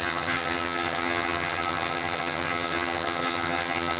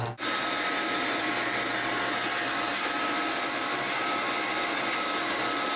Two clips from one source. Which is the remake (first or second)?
first